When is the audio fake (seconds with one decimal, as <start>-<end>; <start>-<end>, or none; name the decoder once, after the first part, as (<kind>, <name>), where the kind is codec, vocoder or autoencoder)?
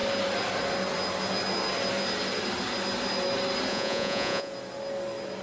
3.7-4.5 (vocoder, Vocos)